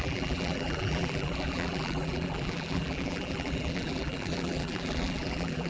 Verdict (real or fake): fake